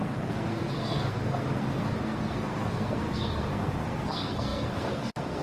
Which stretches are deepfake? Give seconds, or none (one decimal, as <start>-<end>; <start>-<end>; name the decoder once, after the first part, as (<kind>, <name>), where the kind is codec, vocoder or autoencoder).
0.0-5.4 (codec, SNAC)